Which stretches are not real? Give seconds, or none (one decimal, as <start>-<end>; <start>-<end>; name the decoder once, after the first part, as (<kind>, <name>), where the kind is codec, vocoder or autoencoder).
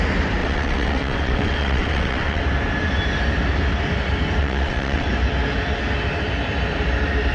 0.4-2.4 (vocoder, WaveNeXt); 4.4-5.1